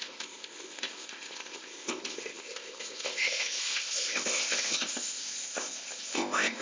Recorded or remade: remade